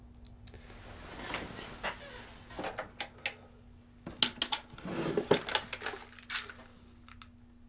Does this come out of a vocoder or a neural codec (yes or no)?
no